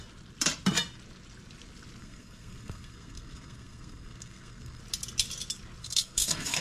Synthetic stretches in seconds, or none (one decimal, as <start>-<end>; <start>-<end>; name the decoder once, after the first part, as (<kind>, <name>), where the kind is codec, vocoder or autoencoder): 2.0-4.8 (codec, SNAC); 5.8-6.6

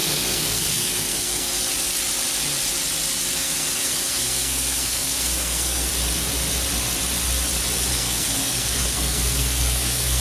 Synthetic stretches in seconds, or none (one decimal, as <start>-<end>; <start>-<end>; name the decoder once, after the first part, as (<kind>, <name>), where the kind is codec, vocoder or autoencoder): 0.0-1.6 (codec, SNAC); 3.3-5.9; 7.9-10.2

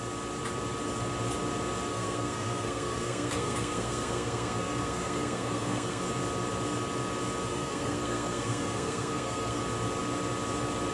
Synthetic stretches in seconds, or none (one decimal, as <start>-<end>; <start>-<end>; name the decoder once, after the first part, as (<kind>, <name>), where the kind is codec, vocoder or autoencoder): 1.9-6.0 (codec, SNAC); 7.5-9.6